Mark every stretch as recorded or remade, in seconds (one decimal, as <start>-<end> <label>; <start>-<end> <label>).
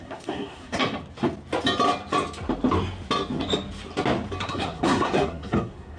0.0-0.8 remade; 0.8-4.4 recorded; 4.4-6.0 remade